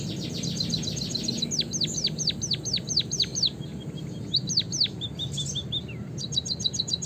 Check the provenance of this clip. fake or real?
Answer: real